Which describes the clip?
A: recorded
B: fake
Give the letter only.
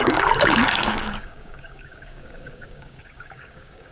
B